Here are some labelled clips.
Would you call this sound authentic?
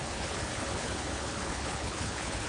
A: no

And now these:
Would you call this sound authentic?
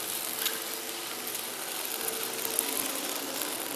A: yes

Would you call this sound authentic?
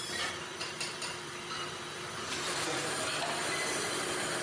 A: yes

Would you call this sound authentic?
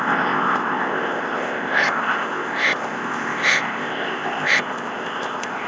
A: no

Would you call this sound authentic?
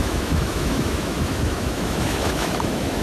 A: no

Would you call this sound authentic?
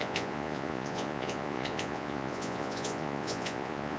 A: no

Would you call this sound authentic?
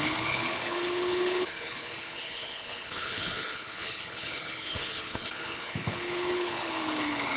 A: no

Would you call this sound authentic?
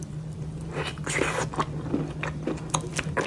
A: yes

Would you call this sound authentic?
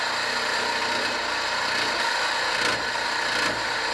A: yes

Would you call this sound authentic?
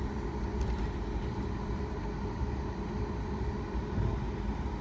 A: yes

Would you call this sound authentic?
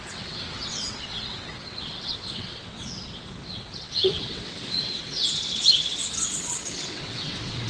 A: no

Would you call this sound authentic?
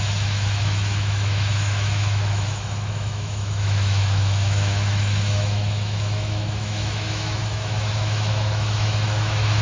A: no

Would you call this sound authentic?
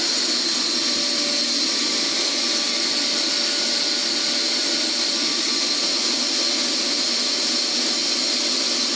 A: yes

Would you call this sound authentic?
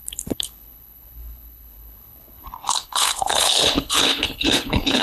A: no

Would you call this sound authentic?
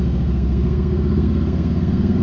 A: no